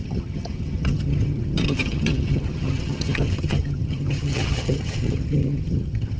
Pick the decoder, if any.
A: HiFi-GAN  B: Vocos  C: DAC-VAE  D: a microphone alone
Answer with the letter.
A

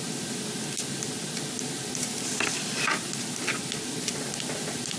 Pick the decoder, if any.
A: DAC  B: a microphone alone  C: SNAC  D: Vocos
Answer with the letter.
B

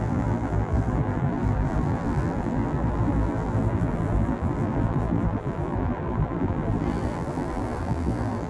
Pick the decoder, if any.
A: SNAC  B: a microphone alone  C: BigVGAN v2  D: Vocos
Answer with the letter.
C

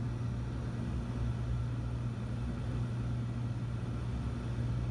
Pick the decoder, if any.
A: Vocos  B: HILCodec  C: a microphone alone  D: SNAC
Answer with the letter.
C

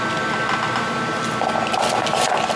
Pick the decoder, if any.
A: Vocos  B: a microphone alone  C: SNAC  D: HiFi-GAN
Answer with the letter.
B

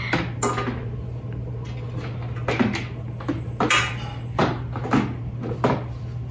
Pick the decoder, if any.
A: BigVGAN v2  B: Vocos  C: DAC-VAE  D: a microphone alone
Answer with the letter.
D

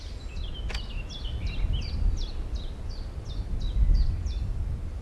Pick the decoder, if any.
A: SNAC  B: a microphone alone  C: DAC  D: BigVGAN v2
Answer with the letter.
B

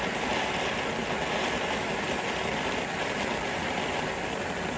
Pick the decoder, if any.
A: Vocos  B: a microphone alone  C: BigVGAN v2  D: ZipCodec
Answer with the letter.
B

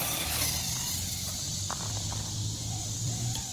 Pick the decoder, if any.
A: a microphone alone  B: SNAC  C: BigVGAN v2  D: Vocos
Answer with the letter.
C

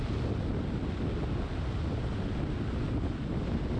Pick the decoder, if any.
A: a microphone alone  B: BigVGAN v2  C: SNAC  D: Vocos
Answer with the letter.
A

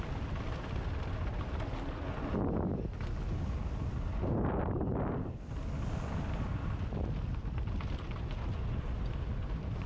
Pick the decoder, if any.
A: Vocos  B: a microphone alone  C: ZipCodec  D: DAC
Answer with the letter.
B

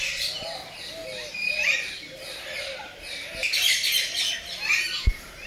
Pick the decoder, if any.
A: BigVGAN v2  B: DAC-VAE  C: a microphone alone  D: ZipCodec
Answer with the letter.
C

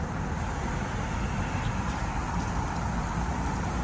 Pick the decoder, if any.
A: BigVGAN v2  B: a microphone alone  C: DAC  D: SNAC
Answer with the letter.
A